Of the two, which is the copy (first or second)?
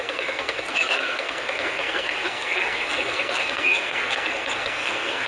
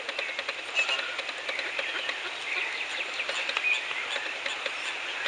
first